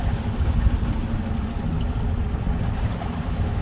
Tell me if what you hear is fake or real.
real